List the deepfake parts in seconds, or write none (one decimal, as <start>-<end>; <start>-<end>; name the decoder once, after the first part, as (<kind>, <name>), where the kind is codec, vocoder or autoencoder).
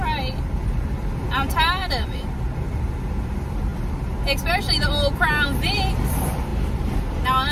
none